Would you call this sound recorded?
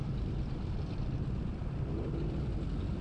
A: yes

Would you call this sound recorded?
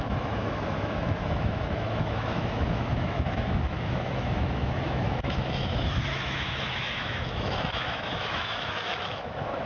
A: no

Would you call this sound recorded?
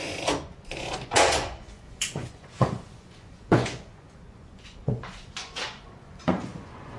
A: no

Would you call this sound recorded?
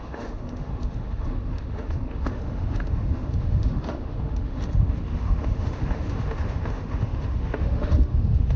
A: no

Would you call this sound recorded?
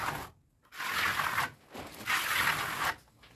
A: yes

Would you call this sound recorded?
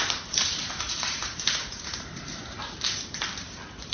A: no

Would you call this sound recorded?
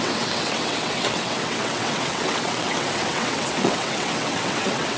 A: no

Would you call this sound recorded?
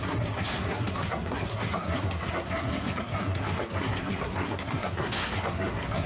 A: no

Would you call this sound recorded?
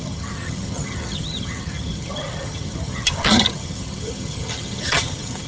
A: no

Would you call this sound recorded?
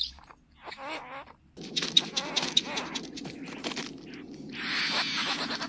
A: yes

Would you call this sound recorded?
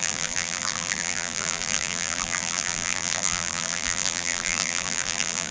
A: no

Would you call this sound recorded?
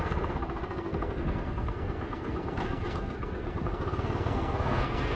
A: no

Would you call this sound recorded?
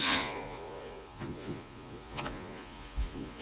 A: no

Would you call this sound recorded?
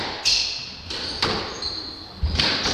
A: yes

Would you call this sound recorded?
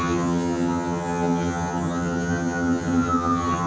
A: no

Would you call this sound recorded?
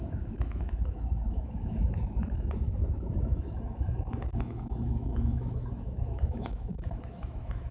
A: no